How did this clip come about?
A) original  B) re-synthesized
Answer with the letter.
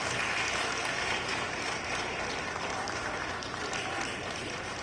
A